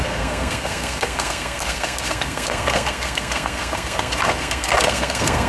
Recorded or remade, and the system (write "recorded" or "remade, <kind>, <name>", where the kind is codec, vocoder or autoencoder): remade, codec, SNAC